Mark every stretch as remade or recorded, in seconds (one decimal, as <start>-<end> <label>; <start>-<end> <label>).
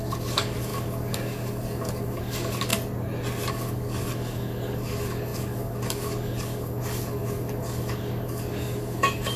0.0-2.7 remade; 2.7-3.5 recorded; 3.5-9.4 remade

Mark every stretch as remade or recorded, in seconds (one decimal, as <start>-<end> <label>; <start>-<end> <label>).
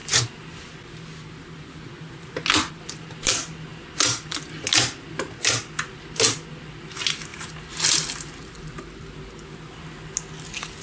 0.0-10.8 recorded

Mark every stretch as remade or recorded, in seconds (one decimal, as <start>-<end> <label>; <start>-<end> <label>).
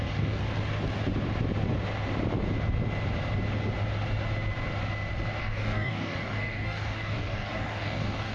0.0-0.4 remade; 0.4-5.4 recorded; 5.4-8.3 remade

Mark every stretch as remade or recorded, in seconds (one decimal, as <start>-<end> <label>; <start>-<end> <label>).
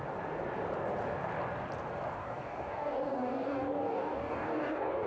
0.0-2.2 recorded; 2.2-5.1 remade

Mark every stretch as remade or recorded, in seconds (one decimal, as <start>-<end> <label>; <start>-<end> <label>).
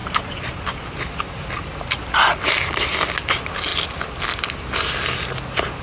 0.0-5.8 recorded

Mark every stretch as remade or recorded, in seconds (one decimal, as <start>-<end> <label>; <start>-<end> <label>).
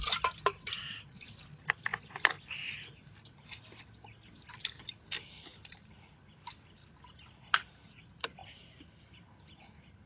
0.0-10.1 recorded